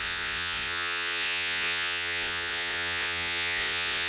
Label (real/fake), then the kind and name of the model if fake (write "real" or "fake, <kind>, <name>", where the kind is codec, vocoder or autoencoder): fake, vocoder, Vocos